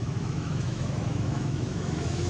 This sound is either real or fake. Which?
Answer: fake